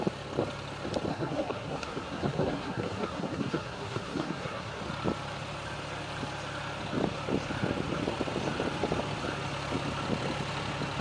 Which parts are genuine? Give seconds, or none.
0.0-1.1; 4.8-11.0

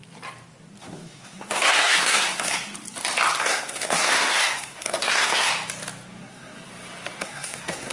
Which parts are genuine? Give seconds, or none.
0.0-0.8; 2.7-3.4; 5.5-6.2; 6.7-7.2

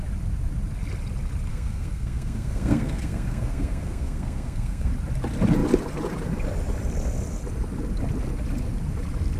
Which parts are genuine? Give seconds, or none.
0.0-1.5; 4.9-9.4